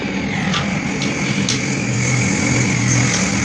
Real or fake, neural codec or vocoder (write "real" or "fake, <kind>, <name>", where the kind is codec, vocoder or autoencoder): real